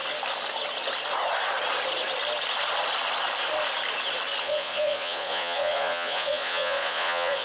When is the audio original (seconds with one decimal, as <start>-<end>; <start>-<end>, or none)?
0.0-4.4